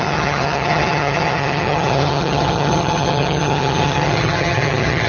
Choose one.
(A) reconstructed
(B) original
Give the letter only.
A